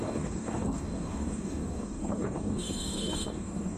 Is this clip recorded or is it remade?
remade